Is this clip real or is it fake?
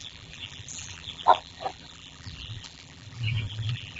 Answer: fake